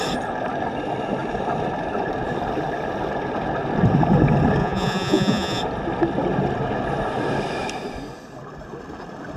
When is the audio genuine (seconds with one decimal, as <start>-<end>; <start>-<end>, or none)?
0.0-4.6; 5.6-9.4